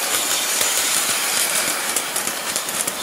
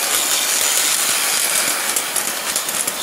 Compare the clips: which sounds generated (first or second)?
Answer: first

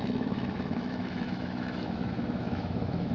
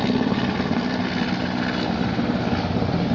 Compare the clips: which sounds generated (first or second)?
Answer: first